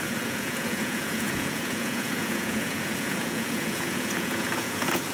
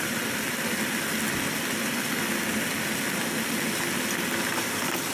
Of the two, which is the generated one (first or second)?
first